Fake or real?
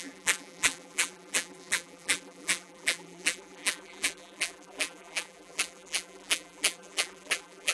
fake